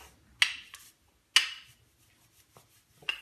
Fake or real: real